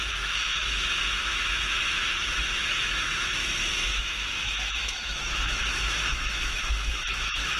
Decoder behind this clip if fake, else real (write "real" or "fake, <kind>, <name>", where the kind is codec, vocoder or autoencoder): fake, autoencoder, DAC-VAE